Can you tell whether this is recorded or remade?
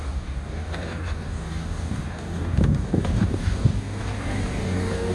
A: remade